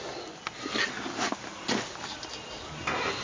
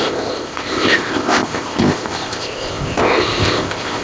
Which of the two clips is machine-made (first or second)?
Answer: second